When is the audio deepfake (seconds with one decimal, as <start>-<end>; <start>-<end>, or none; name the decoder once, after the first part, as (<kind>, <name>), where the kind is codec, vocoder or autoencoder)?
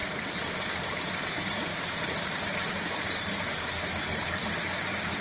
0.0-3.1 (vocoder, BigVGAN v2)